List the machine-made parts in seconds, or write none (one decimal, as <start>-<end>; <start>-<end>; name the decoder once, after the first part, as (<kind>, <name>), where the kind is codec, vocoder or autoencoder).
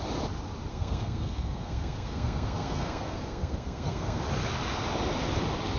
0.7-4.2 (codec, SNAC)